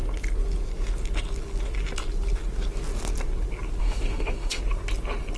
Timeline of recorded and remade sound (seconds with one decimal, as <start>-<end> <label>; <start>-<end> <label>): 0.0-3.8 recorded; 3.8-4.6 remade; 4.6-5.4 recorded